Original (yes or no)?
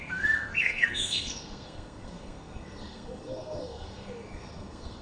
no